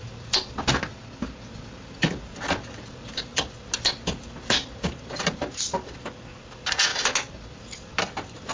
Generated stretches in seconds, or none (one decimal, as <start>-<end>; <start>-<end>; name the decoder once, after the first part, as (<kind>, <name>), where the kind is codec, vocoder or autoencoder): none